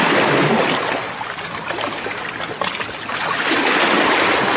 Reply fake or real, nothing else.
real